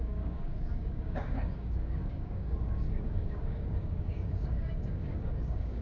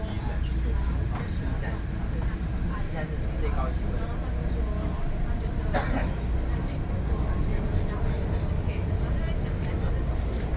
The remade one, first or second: first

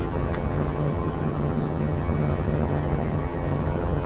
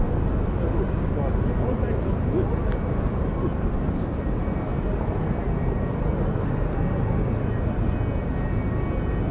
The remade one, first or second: first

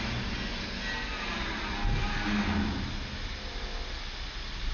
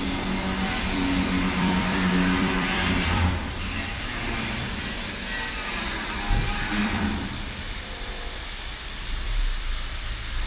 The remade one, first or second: second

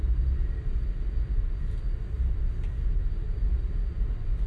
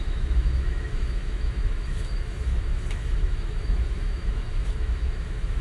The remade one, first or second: second